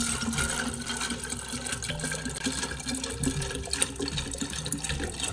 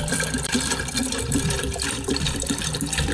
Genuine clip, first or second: first